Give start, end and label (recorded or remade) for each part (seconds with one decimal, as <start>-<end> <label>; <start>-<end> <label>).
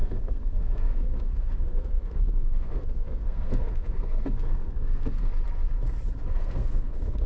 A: 0.0-5.3 remade; 5.3-6.2 recorded; 6.2-7.3 remade